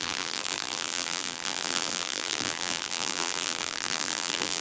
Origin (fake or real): fake